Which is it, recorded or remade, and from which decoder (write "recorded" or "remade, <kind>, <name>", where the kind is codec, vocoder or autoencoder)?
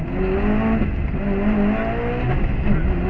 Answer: recorded